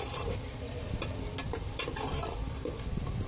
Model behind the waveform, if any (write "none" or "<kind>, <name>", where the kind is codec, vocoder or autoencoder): vocoder, BigVGAN v2